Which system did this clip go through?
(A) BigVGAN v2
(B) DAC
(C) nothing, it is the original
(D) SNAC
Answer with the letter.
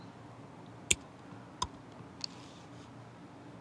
C